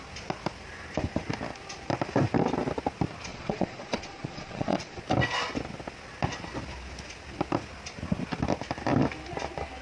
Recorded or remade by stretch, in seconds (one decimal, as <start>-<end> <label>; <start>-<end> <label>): 0.0-3.3 recorded; 3.3-5.0 remade; 5.0-9.8 recorded